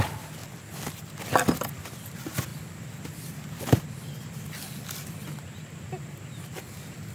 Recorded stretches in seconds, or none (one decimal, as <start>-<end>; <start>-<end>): 0.0-7.1